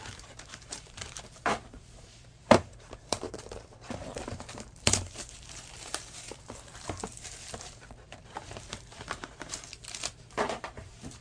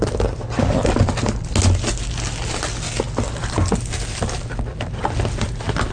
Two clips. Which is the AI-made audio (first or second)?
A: first